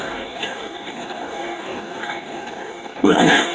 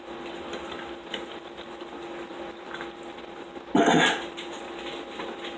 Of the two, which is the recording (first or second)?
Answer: second